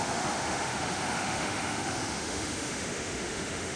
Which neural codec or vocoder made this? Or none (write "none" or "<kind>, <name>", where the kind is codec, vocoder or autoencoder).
autoencoder, DAC-VAE